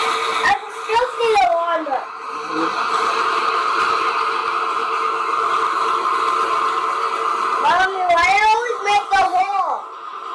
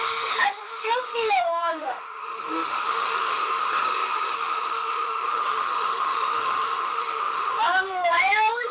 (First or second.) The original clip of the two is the first